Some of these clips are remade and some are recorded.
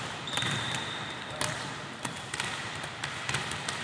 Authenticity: remade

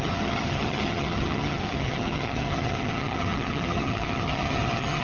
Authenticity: remade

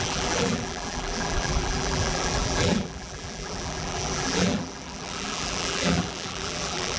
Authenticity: remade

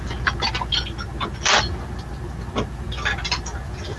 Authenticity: recorded